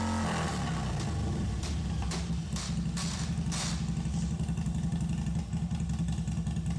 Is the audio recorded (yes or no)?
yes